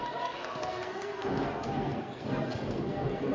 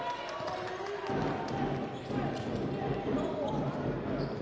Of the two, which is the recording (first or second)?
second